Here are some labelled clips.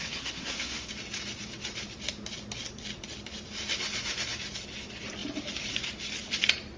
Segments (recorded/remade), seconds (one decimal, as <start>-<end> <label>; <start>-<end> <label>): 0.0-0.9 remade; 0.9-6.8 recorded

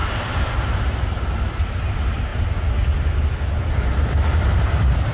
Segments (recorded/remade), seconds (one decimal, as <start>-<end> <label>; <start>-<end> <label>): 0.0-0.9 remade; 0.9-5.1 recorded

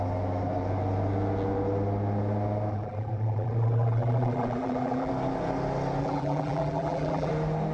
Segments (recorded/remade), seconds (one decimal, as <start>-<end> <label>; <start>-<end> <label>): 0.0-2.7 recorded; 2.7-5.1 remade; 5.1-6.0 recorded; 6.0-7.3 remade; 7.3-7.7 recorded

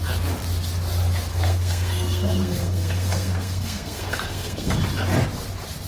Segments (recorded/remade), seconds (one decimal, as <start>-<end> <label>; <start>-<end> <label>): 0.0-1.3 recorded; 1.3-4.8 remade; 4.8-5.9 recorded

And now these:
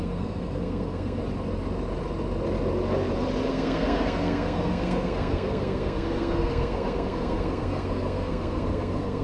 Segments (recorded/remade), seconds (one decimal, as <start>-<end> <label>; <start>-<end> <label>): 0.0-1.2 remade; 1.2-3.5 recorded; 3.5-9.2 remade